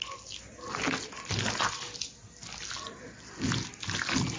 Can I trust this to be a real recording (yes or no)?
yes